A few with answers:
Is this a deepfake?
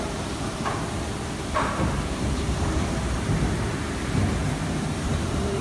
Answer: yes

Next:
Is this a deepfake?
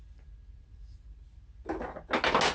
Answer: no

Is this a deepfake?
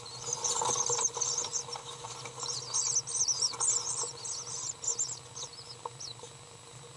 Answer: no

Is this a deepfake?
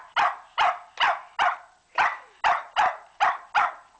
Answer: no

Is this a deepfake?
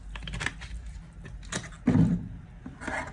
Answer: no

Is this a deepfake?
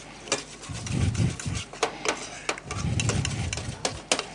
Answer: no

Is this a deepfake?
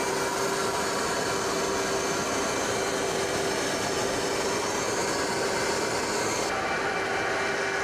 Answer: no